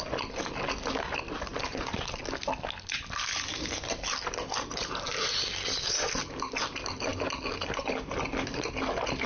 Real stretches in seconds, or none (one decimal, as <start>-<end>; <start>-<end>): 0.0-9.3